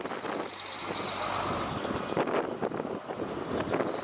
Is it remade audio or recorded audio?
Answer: recorded